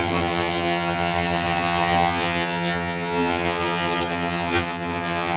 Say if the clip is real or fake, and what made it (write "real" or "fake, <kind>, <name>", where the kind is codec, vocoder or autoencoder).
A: fake, vocoder, HiFi-GAN